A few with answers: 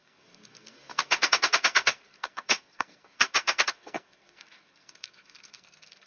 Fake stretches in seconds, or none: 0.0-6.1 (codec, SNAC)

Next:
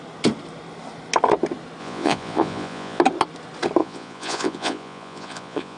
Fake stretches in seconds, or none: 1.8-3.0 (vocoder, Vocos); 3.8-5.8

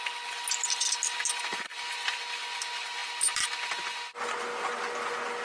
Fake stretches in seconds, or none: none

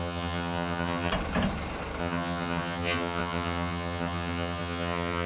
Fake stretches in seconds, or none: 0.0-1.1 (vocoder, HiFi-GAN); 2.0-5.3